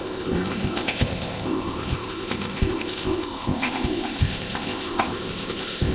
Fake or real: fake